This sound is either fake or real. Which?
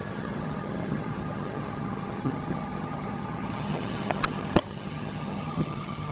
fake